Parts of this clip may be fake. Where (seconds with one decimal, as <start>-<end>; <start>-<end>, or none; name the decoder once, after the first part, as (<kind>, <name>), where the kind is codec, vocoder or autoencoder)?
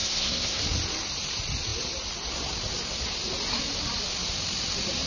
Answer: 0.0-0.6 (codec, SNAC)